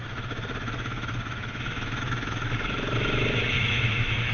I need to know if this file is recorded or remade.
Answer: remade